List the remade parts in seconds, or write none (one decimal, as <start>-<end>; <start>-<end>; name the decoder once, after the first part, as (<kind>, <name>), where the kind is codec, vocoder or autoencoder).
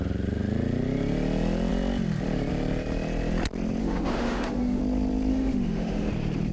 3.8-4.8 (autoencoder, DAC-VAE); 5.3-6.1